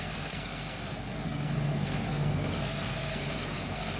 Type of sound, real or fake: fake